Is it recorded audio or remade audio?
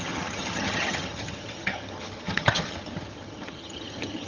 remade